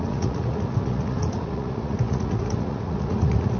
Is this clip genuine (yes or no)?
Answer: no